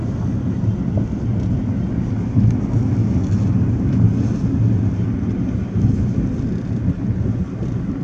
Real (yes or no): yes